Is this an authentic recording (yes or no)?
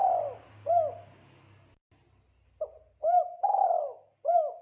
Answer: yes